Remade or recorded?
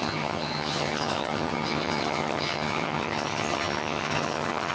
remade